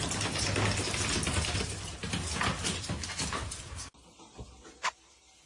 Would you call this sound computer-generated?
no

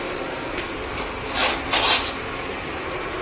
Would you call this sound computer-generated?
no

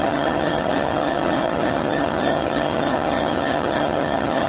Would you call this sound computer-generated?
yes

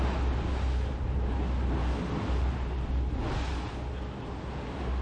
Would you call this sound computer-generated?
no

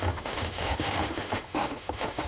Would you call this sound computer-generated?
yes